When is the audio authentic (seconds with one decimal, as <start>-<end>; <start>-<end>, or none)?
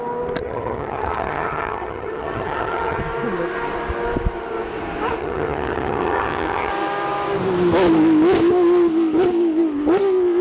0.0-0.4; 3.0-5.2; 6.7-10.4